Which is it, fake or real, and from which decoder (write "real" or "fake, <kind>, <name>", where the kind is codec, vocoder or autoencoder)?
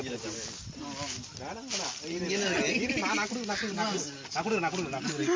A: real